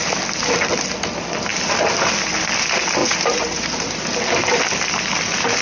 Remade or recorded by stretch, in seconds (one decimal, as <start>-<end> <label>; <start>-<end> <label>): 0.0-3.0 recorded; 3.0-4.0 remade; 4.0-5.6 recorded